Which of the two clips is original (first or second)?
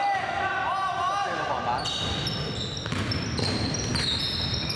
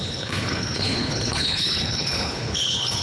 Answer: first